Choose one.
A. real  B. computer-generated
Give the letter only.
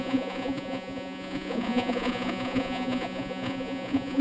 B